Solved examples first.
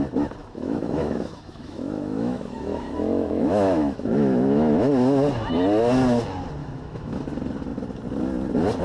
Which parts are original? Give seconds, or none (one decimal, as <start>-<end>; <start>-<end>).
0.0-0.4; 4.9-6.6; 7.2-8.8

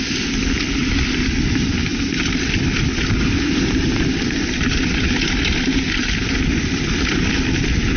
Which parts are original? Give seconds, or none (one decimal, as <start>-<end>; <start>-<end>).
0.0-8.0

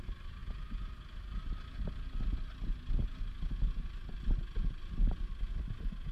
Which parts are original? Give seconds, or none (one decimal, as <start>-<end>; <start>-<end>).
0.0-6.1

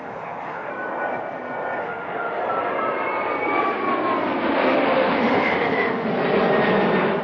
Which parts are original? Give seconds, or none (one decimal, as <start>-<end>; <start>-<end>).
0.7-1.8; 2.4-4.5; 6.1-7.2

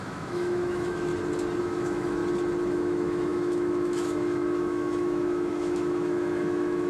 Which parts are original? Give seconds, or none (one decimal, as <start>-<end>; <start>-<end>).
1.1-1.6; 2.2-2.7

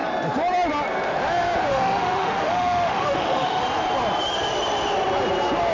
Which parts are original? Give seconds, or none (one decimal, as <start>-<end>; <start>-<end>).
0.0-1.7; 3.6-5.7

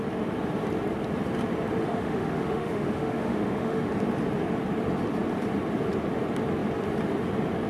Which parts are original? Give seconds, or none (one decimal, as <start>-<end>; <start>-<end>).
0.0-1.8; 3.9-7.7